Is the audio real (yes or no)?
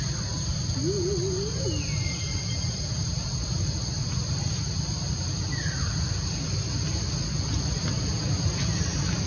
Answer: yes